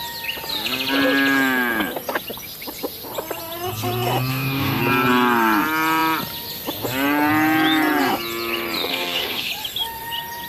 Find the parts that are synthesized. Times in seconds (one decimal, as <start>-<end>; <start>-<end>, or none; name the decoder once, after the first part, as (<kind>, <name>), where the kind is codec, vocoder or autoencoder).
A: 4.3-4.8 (codec, DAC); 8.9-9.5